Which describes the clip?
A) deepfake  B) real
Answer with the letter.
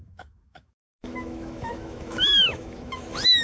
A